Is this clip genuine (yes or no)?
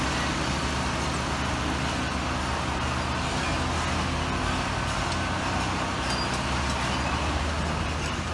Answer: yes